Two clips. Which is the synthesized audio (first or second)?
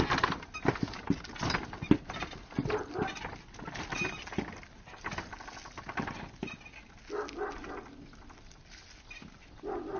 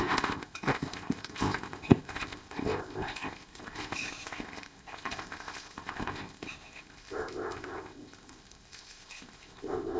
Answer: second